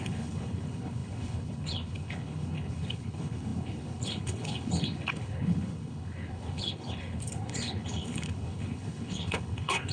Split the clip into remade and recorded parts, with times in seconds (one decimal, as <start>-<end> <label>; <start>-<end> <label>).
0.0-9.9 remade